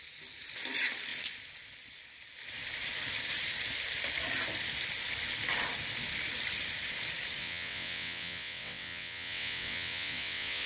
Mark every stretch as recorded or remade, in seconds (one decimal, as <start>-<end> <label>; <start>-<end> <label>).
0.0-7.4 recorded; 7.4-10.7 remade